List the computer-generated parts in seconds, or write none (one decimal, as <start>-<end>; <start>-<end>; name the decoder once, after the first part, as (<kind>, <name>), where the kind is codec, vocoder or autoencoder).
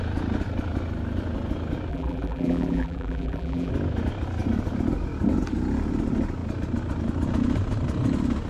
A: 1.9-3.7 (vocoder, BigVGAN v2)